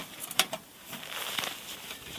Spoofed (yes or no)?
no